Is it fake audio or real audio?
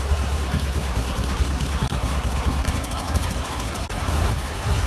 fake